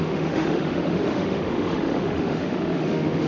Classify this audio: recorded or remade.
remade